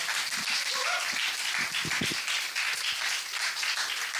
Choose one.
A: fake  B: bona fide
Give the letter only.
B